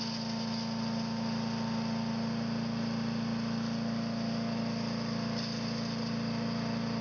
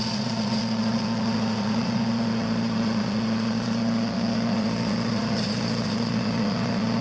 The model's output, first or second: second